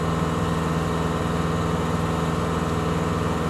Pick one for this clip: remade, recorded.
recorded